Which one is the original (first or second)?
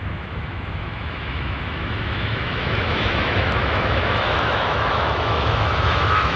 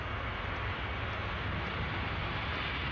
second